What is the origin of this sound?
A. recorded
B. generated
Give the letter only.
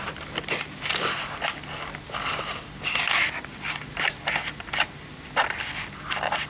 A